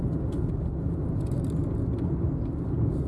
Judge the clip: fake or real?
real